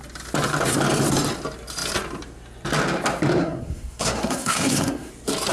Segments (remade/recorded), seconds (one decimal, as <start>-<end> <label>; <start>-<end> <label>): 0.0-3.4 recorded; 3.4-5.1 remade; 5.1-5.5 recorded